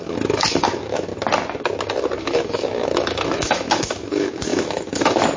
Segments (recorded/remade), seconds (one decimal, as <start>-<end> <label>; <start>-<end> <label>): 0.0-1.1 remade; 1.1-2.2 recorded; 2.2-5.4 remade